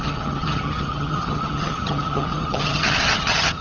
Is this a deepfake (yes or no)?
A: yes